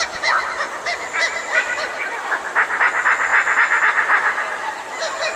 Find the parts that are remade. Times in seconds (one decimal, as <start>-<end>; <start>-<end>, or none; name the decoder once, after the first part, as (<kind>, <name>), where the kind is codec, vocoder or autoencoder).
none